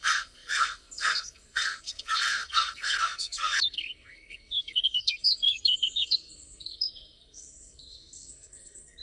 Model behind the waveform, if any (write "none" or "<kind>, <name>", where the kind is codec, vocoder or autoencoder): codec, SNAC